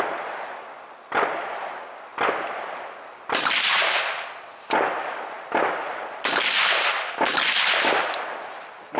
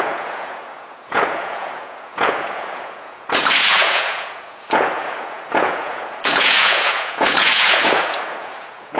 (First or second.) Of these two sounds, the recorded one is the first